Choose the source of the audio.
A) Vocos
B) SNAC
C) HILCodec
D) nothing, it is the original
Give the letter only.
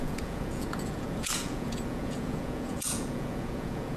A